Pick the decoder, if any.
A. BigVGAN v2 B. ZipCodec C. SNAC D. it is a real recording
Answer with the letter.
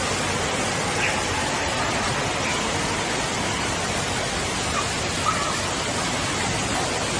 D